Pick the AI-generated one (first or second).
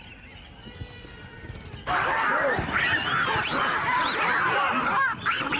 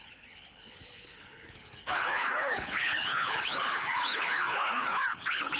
second